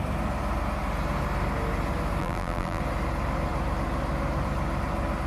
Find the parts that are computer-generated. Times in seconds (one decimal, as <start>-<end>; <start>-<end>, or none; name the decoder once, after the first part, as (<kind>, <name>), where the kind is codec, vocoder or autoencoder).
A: 2.2-2.8 (vocoder, BigVGAN v2)